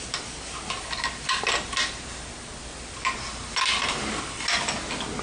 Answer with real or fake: real